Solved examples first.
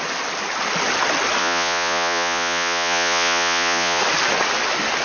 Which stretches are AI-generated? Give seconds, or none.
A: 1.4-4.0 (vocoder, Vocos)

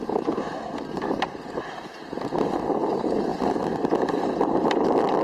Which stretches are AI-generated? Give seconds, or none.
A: none

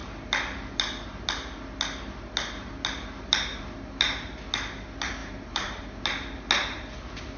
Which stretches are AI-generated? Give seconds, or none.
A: 5.2-6.0 (vocoder, BigVGAN v2)